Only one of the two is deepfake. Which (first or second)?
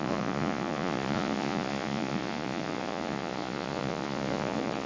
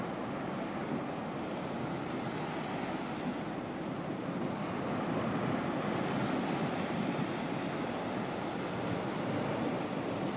first